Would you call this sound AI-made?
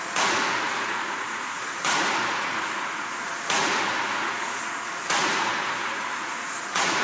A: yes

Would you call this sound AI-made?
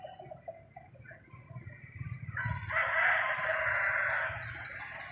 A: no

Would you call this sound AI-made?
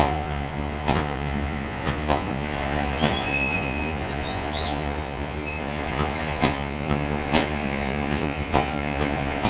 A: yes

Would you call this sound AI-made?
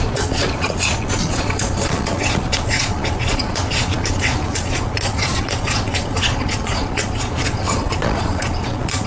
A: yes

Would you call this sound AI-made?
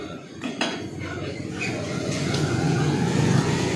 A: yes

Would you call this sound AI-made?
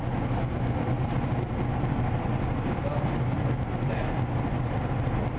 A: no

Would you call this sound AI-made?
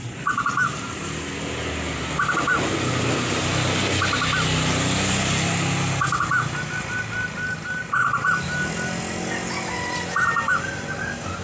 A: no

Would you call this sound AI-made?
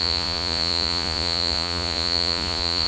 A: yes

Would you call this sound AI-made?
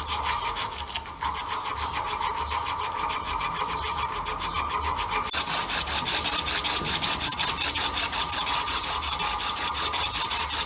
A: no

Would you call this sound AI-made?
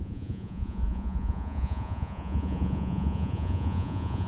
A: yes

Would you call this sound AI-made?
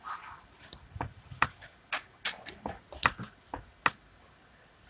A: no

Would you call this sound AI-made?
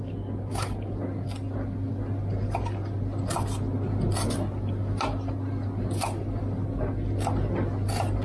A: no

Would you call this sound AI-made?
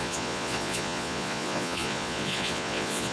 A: yes